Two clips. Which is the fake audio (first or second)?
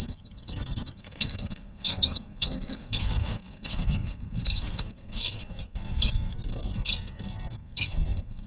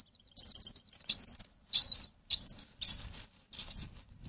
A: first